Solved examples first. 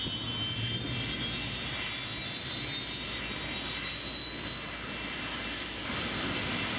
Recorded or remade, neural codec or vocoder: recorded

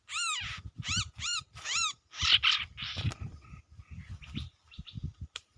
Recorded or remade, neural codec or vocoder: remade, vocoder, BigVGAN v2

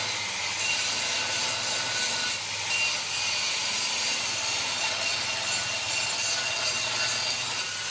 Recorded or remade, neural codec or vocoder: recorded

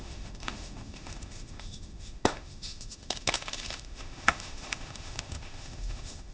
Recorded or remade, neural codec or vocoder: remade, autoencoder, DAC-VAE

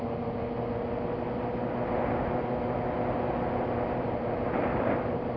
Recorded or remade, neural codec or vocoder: recorded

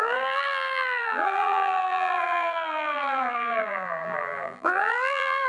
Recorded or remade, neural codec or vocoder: remade, vocoder, BigVGAN v2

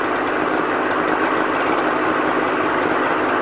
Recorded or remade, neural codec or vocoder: recorded